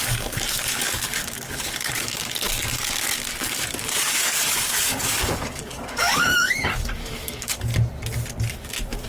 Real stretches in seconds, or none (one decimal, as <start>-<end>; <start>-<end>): 7.7-8.5